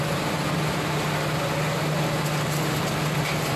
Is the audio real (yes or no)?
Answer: yes